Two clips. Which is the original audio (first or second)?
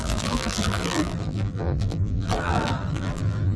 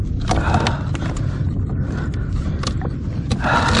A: second